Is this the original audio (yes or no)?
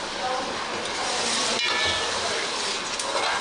yes